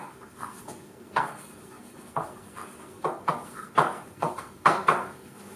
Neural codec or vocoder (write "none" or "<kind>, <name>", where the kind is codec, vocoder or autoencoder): codec, SNAC